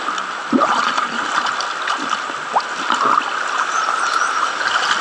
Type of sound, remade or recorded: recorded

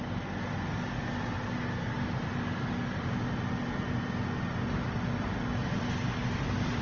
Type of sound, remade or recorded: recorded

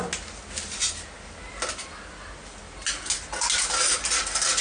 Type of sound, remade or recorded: recorded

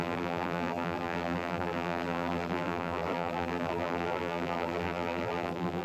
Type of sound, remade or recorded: remade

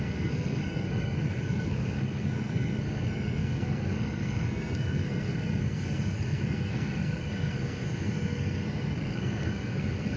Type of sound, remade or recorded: remade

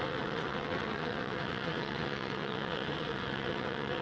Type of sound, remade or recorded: remade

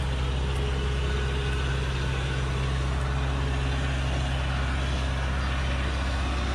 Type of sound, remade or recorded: recorded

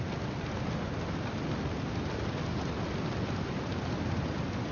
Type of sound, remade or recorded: recorded